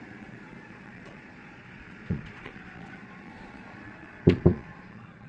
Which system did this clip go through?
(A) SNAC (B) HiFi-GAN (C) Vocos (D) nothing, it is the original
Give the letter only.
C